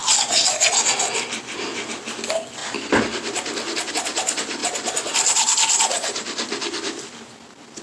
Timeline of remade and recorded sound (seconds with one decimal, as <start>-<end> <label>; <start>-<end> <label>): 0.0-7.8 recorded

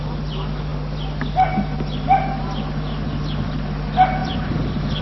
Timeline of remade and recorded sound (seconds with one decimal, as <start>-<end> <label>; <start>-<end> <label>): 0.0-4.2 recorded; 4.2-5.0 remade

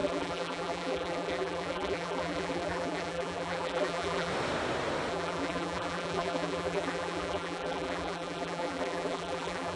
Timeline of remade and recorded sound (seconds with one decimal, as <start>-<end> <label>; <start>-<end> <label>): 0.0-4.3 remade; 4.3-5.1 recorded; 5.1-9.8 remade